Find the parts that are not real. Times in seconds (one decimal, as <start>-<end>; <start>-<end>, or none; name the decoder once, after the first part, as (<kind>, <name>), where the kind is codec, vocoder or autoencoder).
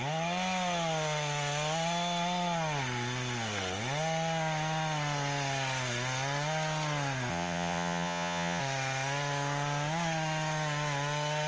7.3-8.6 (vocoder, Vocos)